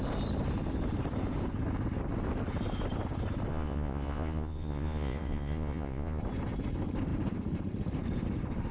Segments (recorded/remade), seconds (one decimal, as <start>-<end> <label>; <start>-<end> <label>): 0.0-3.5 recorded; 3.5-6.2 remade; 6.2-8.7 recorded